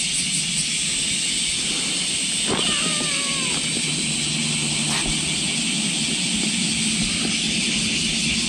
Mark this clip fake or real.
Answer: real